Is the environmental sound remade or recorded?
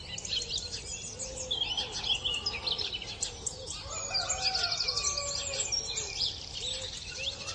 recorded